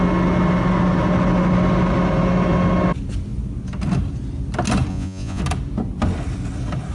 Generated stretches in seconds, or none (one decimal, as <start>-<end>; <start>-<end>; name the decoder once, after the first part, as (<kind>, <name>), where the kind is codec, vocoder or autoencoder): 4.9-5.4 (vocoder, Vocos)